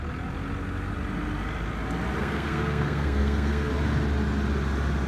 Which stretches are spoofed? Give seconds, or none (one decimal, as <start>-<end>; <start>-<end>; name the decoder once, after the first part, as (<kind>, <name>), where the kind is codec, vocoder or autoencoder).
2.2-3.7 (codec, SNAC)